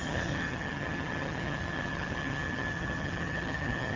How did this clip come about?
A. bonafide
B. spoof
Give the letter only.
B